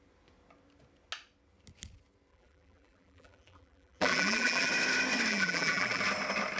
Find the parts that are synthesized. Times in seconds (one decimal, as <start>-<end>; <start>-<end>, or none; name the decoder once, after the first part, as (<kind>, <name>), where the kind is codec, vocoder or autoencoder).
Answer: 2.3-4.7 (vocoder, BigVGAN v2); 5.3-6.0